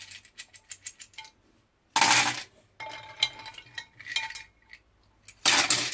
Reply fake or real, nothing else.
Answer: real